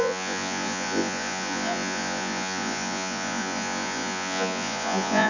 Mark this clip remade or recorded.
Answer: remade